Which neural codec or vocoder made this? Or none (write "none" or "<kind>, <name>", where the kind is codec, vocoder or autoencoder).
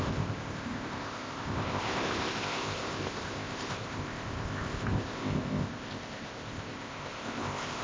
codec, ZipCodec